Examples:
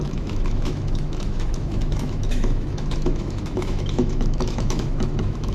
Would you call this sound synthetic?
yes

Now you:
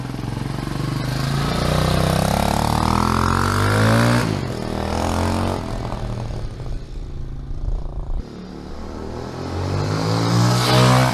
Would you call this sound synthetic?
no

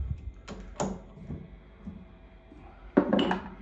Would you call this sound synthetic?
no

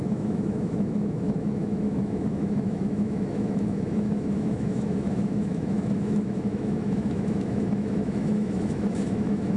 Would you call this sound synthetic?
yes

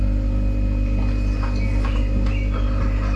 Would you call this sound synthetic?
no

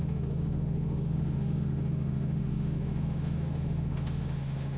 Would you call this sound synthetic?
yes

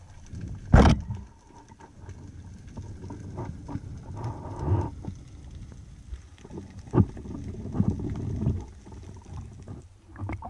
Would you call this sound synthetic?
no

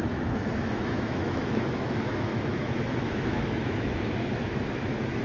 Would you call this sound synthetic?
yes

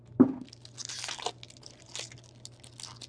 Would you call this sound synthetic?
no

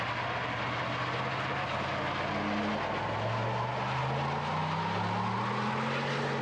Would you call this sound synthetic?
no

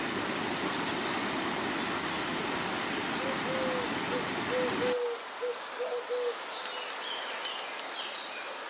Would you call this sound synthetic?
no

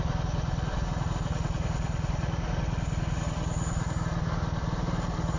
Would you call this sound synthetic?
no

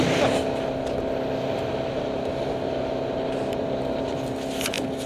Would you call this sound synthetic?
no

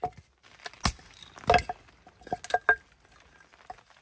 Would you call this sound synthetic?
no